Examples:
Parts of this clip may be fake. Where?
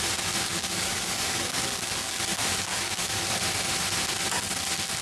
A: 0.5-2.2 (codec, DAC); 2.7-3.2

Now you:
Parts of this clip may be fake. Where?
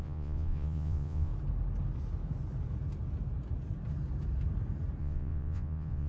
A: 0.0-1.3 (vocoder, Vocos); 5.0-6.1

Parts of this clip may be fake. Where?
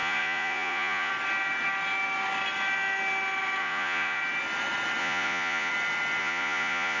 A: 0.0-1.1 (vocoder, Vocos); 3.6-4.2; 5.0-5.7; 6.2-7.0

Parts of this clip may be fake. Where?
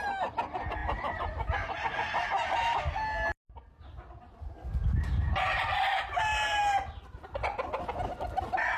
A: none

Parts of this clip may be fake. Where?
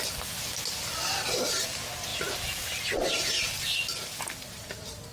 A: none